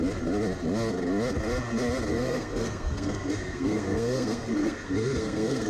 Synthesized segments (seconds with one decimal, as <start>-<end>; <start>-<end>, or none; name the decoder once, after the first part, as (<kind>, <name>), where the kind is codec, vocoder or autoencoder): 2.1-5.7 (codec, SNAC)